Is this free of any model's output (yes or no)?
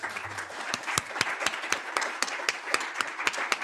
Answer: no